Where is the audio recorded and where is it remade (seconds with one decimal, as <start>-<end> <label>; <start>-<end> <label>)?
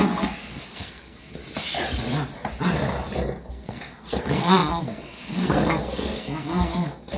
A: 0.0-1.4 remade; 1.4-3.5 recorded; 3.5-7.2 remade